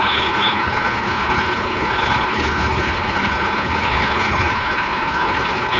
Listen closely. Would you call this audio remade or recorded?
remade